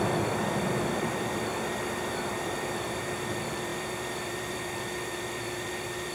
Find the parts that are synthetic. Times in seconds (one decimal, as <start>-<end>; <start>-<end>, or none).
0.0-6.1